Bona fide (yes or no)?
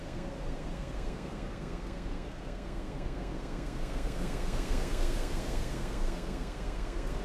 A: no